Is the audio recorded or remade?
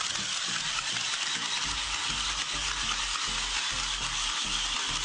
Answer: recorded